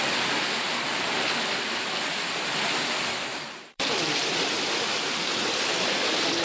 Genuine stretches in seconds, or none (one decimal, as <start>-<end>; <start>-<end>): 0.0-3.3; 4.0-6.4